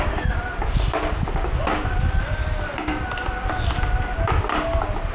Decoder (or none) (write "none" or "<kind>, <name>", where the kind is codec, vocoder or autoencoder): none